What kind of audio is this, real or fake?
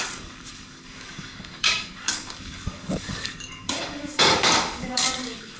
fake